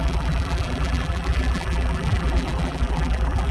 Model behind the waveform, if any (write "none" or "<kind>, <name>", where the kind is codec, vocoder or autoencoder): vocoder, BigVGAN v2